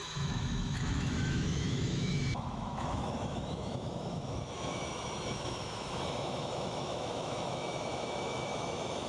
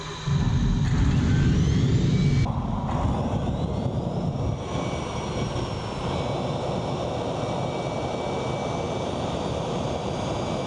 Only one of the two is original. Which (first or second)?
second